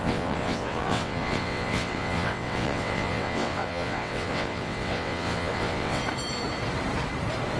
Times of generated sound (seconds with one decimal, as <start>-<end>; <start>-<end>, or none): 0.0-6.0